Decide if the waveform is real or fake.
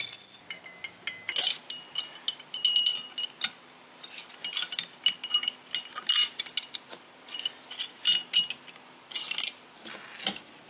real